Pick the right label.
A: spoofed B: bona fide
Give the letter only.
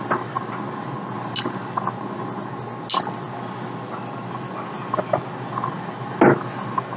B